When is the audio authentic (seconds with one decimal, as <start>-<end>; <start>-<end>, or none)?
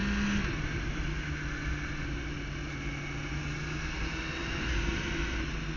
0.0-5.8